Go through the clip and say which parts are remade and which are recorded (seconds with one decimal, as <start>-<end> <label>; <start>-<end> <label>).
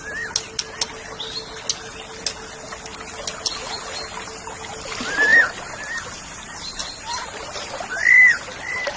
0.0-9.0 recorded